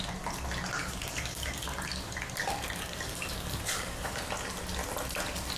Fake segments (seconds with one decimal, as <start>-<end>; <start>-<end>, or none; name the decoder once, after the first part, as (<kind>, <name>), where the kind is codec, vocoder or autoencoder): 0.8-4.2 (codec, DAC)